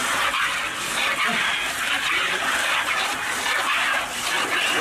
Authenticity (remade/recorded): recorded